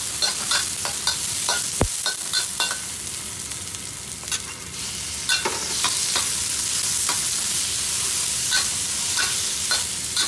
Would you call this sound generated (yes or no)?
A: no